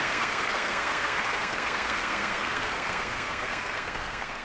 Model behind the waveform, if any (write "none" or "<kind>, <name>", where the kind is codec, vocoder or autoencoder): codec, SNAC